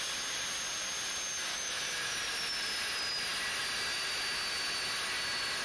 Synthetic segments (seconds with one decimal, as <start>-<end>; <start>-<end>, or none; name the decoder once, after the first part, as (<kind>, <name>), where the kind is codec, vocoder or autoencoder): 1.5-2.2 (autoencoder, DAC-VAE)